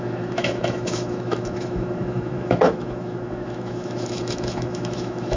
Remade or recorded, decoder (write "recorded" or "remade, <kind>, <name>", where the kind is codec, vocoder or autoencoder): remade, autoencoder, DAC-VAE